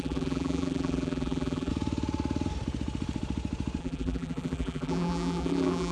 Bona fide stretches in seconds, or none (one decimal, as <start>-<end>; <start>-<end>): 1.7-3.8